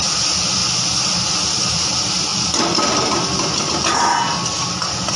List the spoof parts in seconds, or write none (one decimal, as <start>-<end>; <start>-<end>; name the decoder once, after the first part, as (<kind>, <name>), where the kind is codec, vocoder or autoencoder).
none